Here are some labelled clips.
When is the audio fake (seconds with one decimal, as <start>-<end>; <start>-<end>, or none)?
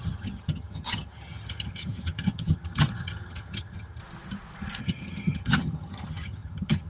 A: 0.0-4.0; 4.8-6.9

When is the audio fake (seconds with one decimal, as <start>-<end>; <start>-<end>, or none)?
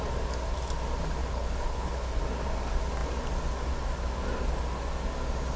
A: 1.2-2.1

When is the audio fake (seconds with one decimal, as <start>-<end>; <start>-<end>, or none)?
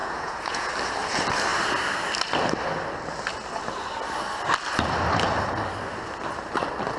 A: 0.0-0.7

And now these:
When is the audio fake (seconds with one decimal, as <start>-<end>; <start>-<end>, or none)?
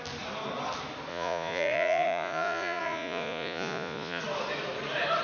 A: 1.1-4.2